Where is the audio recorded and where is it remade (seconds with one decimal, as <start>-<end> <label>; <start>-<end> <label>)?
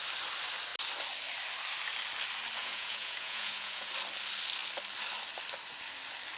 0.0-2.6 recorded; 2.6-3.9 remade; 3.9-6.4 recorded